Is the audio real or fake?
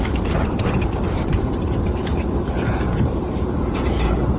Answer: fake